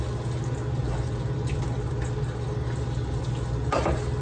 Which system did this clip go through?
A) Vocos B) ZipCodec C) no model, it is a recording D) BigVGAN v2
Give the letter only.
C